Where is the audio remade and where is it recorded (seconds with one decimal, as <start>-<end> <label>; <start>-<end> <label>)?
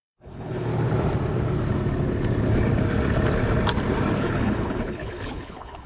0.0-0.7 remade; 0.7-4.2 recorded; 4.2-5.9 remade